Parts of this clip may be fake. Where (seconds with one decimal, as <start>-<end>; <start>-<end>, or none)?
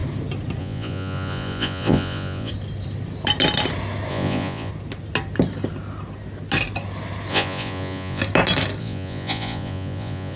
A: 0.6-2.5; 4.1-4.7; 7.3-8.2; 8.8-10.4